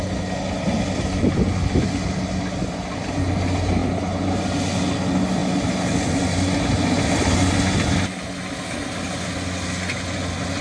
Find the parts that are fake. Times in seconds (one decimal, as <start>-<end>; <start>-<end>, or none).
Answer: none